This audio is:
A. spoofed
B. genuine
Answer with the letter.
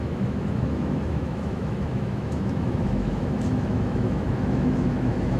A